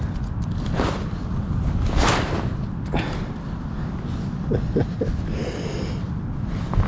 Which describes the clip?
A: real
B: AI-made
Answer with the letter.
A